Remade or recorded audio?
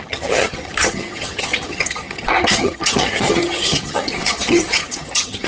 remade